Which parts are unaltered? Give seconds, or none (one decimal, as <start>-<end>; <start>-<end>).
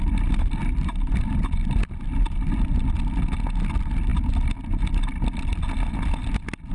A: 0.0-0.6; 3.0-6.7